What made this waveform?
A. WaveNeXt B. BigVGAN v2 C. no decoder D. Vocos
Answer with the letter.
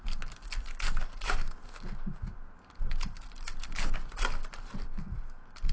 C